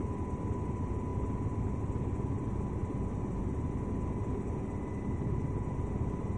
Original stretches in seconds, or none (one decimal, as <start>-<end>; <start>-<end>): 0.0-6.4